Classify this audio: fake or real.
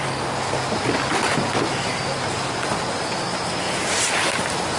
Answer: real